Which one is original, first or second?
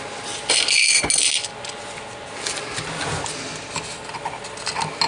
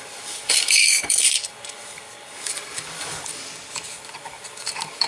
first